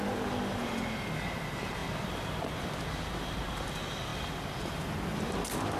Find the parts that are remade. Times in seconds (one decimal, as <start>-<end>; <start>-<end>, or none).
none